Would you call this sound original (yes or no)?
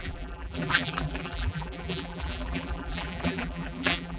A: no